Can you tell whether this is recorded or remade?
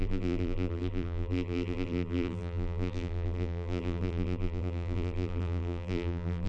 remade